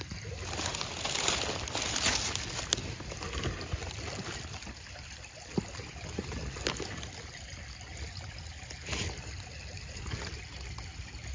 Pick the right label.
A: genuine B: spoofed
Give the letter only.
A